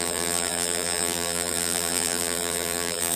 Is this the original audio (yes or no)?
no